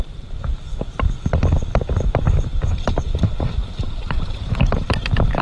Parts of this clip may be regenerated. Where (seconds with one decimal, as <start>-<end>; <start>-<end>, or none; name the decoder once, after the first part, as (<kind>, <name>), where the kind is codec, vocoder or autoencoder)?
0.0-0.7 (vocoder, BigVGAN v2); 2.5-5.4